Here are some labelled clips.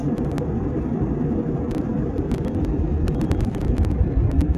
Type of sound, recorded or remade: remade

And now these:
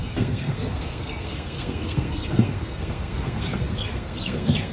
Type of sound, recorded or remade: remade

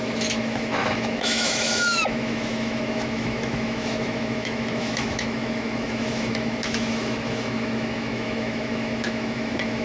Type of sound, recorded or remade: remade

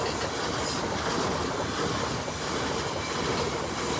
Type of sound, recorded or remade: recorded